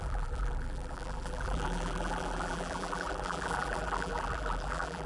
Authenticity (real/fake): fake